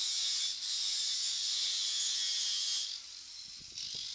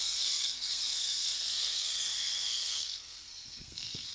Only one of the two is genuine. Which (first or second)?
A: first